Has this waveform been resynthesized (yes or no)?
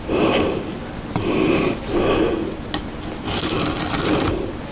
no